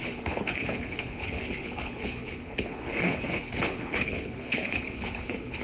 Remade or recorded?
remade